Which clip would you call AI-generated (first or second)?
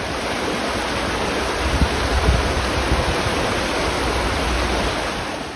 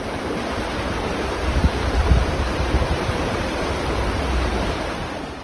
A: second